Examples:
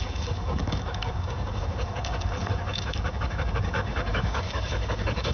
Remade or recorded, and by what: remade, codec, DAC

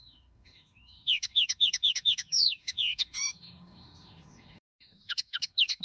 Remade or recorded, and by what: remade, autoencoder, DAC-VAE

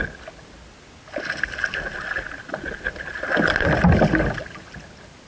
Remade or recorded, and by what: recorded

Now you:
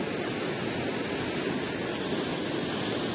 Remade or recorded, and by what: recorded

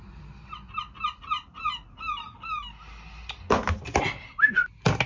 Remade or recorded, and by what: recorded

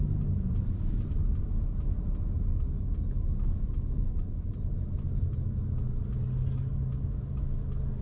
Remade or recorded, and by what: recorded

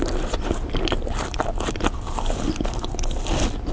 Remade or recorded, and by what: recorded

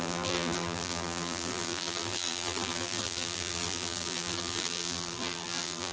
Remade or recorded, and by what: remade, vocoder, BigVGAN v2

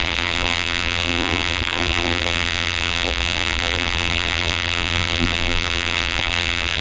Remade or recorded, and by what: remade, vocoder, BigVGAN v2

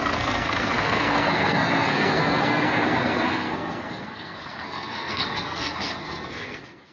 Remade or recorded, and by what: remade, codec, SNAC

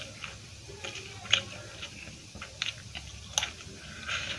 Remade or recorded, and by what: recorded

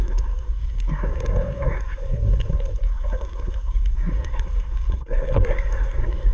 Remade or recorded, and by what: remade, codec, SNAC